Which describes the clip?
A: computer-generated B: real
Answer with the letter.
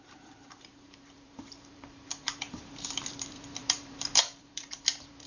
A